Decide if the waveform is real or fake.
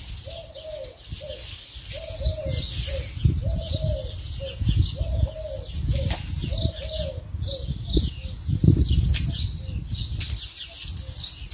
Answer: real